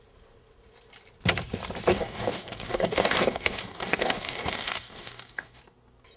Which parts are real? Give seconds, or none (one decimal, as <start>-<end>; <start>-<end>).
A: 0.0-1.9; 5.6-6.2